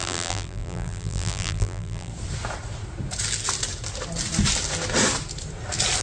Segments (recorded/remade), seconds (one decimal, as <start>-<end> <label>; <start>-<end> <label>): 0.0-2.1 remade; 2.1-6.0 recorded